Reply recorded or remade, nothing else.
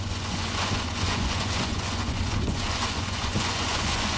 remade